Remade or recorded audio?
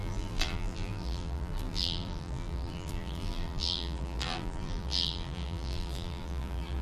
remade